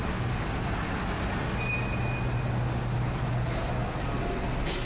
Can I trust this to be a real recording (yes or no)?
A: yes